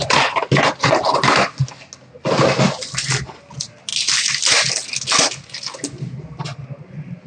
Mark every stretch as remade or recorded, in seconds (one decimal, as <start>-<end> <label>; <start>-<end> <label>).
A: 0.0-7.3 recorded